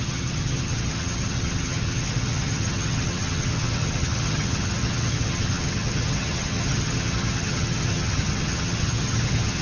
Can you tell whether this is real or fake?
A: fake